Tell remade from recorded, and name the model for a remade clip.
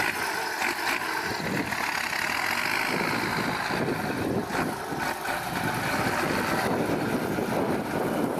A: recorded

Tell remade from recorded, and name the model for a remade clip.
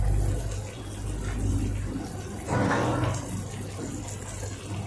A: recorded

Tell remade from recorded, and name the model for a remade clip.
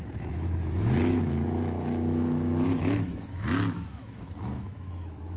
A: remade, autoencoder, DAC-VAE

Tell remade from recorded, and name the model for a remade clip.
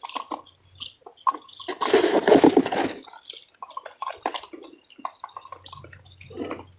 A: recorded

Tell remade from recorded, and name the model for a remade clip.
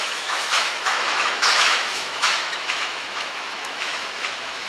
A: remade, autoencoder, DAC-VAE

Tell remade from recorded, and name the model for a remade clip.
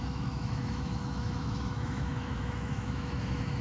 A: remade, autoencoder, DAC-VAE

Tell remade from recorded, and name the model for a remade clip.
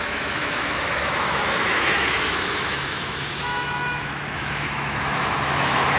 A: remade, autoencoder, DAC-VAE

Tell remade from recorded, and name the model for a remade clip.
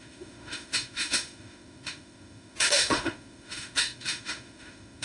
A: remade, autoencoder, DAC-VAE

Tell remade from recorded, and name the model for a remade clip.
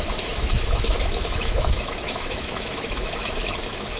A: remade, autoencoder, DAC-VAE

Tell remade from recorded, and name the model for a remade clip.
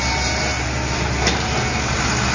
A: recorded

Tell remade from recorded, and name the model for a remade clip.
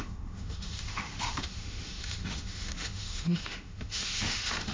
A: remade, autoencoder, DAC-VAE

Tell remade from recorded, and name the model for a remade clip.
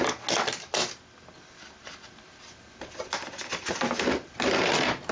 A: recorded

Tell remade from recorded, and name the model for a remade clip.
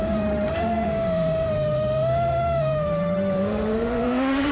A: remade, autoencoder, DAC-VAE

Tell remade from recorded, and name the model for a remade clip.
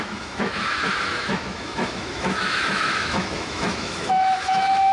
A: remade, autoencoder, DAC-VAE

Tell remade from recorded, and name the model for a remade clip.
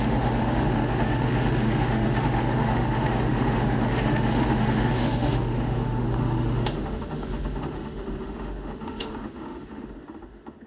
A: remade, autoencoder, DAC-VAE